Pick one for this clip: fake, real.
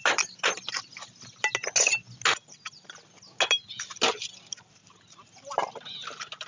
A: real